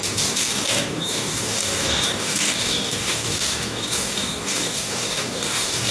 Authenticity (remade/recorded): remade